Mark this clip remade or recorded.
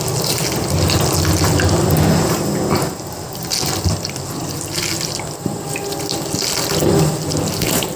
recorded